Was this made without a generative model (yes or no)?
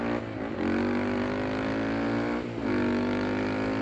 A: yes